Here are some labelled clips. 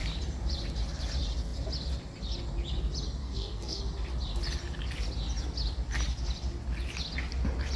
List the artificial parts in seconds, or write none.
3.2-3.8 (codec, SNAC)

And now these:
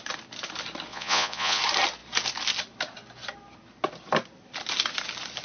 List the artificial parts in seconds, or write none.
0.9-1.6 (vocoder, Vocos)

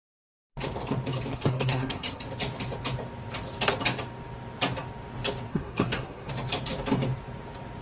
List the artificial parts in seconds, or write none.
1.3-2.2 (codec, SNAC); 5.5-6.3

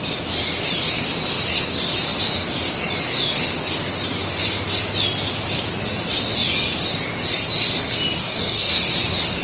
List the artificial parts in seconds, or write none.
8.2-8.8 (codec, DAC)

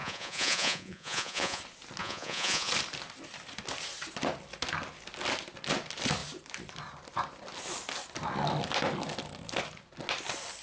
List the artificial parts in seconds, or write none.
0.0-1.6 (vocoder, Vocos); 2.0-2.7

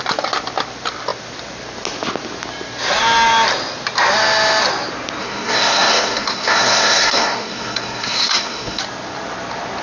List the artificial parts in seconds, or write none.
5.2-8.8 (codec, SNAC)

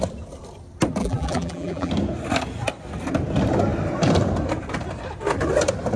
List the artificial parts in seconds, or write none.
1.0-1.9 (vocoder, BigVGAN v2)